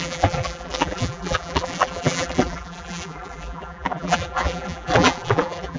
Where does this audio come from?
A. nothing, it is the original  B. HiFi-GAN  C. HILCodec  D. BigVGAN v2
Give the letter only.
D